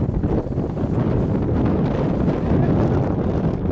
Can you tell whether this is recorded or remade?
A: recorded